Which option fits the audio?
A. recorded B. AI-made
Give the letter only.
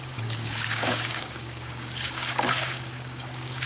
B